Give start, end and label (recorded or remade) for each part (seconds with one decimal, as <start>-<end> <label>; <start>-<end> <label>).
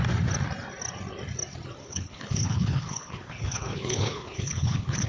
0.0-1.8 recorded; 1.8-5.1 remade